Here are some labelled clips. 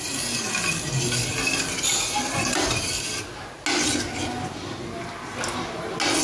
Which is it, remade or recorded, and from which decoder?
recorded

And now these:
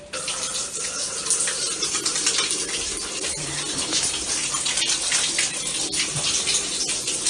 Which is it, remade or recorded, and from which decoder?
recorded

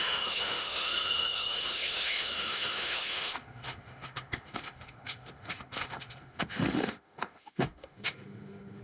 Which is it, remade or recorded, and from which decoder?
remade, autoencoder, DAC-VAE